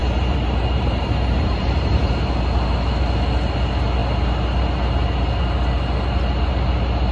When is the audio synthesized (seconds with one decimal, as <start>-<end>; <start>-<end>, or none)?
0.0-2.1